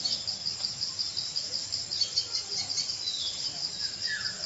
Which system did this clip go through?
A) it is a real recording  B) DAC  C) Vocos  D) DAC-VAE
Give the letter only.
A